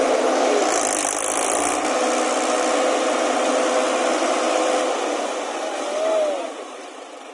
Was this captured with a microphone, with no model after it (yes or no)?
yes